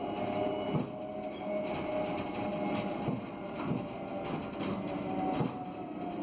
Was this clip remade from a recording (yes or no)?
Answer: no